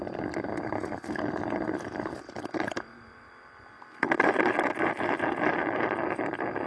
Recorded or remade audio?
recorded